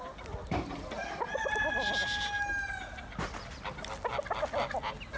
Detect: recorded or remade recorded